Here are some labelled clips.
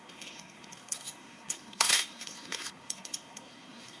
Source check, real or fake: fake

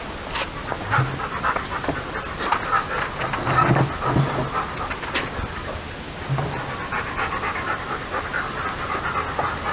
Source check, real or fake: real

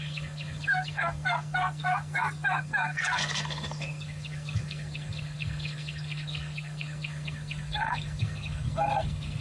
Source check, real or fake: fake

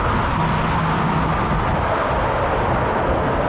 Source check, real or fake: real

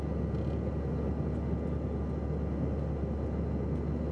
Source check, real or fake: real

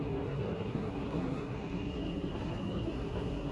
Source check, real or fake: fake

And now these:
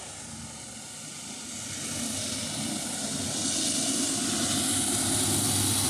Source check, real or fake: real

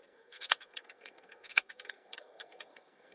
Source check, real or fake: fake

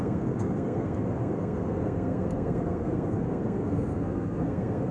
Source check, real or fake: fake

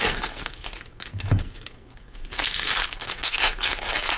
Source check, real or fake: fake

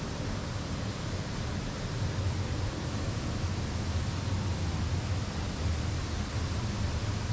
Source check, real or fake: real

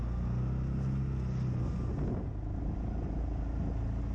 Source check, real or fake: real